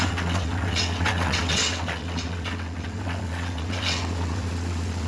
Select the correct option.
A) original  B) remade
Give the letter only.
B